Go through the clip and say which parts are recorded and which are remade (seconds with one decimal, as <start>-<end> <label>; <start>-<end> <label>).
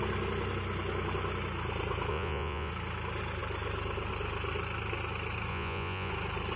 0.0-2.1 recorded; 2.1-2.7 remade; 2.7-5.5 recorded; 5.5-6.1 remade; 6.1-6.6 recorded